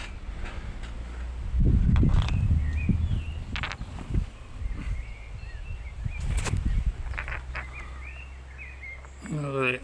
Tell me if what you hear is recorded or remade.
recorded